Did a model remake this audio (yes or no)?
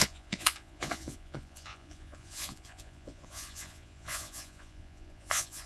yes